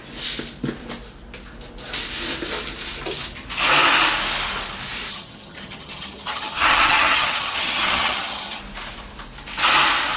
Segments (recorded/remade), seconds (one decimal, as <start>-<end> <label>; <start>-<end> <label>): 0.0-5.1 recorded; 5.1-8.6 remade; 8.6-10.2 recorded